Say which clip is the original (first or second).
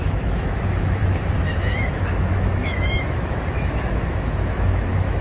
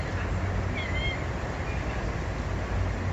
second